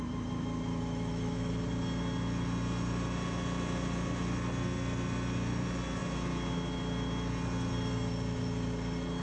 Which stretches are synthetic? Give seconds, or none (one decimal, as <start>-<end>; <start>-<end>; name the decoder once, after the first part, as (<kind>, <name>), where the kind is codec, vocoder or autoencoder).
0.7-1.5 (autoencoder, DAC-VAE)

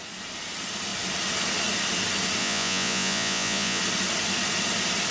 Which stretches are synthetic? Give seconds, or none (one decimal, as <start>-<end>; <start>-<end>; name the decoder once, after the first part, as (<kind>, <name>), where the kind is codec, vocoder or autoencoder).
2.4-3.8 (vocoder, Vocos)